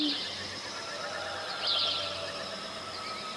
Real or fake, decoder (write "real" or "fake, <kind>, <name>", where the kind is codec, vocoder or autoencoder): real